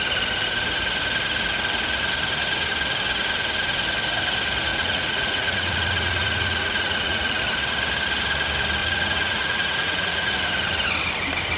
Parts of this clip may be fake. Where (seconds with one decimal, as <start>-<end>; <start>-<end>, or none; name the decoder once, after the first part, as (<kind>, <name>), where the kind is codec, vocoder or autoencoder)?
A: 4.7-7.4 (vocoder, Vocos); 8.8-10.3